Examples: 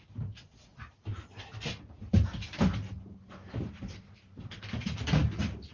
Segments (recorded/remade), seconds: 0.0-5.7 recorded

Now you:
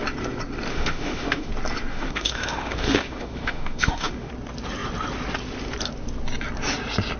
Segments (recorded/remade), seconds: 0.0-0.7 recorded; 0.7-1.5 remade; 1.5-1.9 recorded; 1.9-4.3 remade; 4.3-7.2 recorded

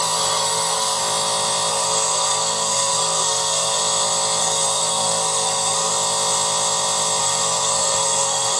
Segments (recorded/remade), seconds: 0.0-1.0 remade; 1.0-1.7 recorded; 1.7-3.8 remade; 3.8-4.4 recorded; 4.4-5.9 remade; 5.9-7.2 recorded; 7.2-8.6 remade

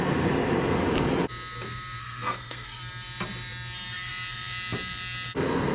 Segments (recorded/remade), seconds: 0.0-2.0 recorded; 2.0-2.8 remade; 2.8-5.7 recorded

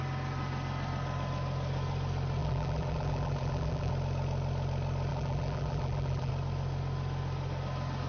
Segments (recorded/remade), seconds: 0.0-2.4 recorded; 2.4-3.9 remade; 3.9-5.1 recorded; 5.1-6.3 remade; 6.3-8.1 recorded